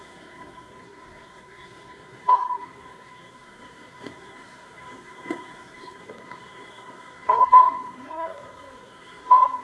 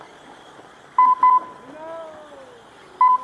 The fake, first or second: first